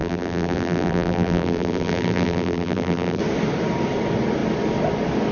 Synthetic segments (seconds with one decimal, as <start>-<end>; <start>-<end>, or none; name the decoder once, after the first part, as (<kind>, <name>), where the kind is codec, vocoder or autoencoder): 0.0-3.2 (vocoder, BigVGAN v2)